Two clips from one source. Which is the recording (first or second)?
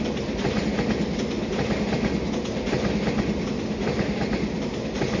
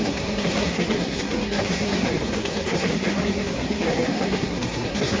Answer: first